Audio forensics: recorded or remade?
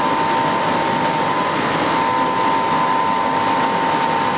recorded